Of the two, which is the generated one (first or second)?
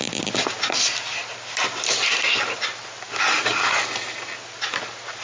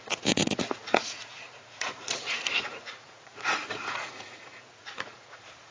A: second